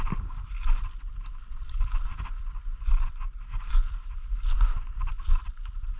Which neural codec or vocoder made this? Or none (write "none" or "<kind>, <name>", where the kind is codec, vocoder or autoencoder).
none